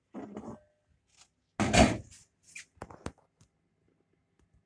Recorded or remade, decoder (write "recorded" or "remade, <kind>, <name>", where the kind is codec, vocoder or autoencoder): recorded